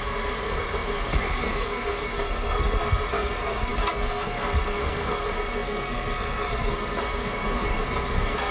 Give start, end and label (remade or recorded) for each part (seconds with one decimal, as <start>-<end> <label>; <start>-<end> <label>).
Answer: 0.0-8.5 remade